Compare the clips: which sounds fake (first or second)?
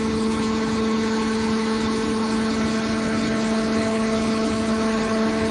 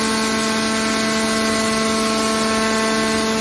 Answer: first